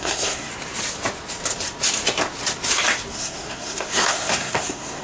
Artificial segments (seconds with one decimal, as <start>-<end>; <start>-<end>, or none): 0.0-0.5; 3.1-5.0